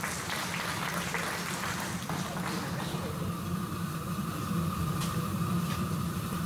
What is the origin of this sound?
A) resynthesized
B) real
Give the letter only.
A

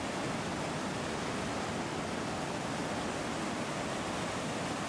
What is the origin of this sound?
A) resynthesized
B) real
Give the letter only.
B